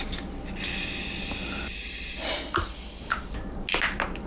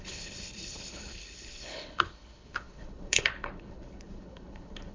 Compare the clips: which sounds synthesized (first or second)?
second